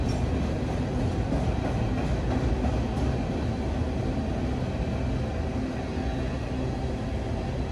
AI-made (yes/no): no